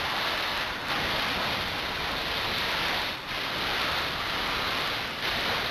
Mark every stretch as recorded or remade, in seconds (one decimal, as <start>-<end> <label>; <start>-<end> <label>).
0.0-5.7 recorded